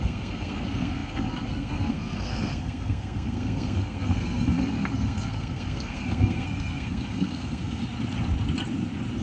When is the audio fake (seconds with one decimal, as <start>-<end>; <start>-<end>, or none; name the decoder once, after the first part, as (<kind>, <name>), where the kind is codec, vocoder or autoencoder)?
0.0-7.8 (codec, SNAC)